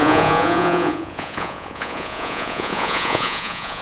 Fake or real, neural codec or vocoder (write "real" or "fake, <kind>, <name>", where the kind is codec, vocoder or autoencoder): fake, vocoder, Vocos